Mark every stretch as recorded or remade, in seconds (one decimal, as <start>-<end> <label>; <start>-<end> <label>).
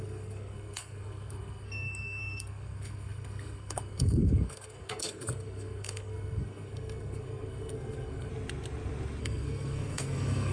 0.0-8.3 remade; 8.3-9.2 recorded; 9.2-10.5 remade